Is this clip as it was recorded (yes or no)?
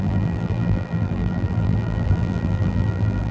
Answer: no